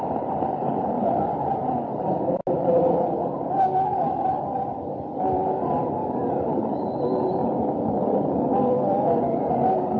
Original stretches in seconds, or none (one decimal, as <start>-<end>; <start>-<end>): 0.0-6.0; 7.0-10.0